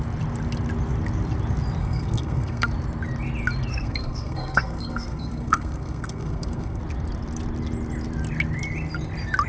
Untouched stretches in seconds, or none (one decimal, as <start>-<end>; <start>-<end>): 0.0-1.8; 2.7-3.7; 6.8-9.5

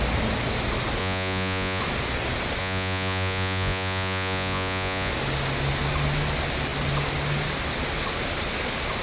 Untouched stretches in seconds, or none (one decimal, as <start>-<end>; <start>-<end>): 0.0-1.0; 1.8-2.6; 5.1-9.0

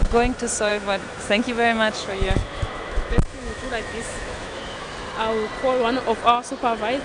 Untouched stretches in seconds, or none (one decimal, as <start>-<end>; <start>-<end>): 0.0-0.7; 4.9-7.0

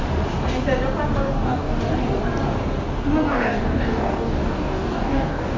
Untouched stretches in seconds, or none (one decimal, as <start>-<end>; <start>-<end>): 0.0-1.1; 1.8-3.3

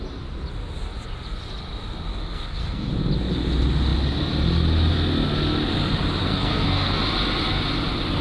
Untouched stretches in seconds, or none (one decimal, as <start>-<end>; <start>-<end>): 0.0-2.1; 2.9-6.2; 7.0-8.2